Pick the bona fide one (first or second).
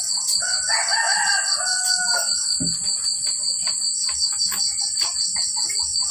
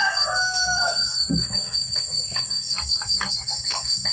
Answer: first